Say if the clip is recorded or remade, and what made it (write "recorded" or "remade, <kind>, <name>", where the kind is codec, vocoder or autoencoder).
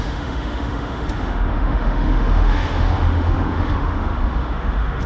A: remade, autoencoder, DAC-VAE